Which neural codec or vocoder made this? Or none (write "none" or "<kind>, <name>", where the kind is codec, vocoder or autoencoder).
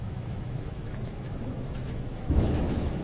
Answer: autoencoder, DAC-VAE